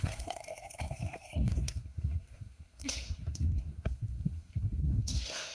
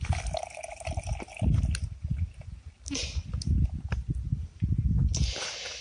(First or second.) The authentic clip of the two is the second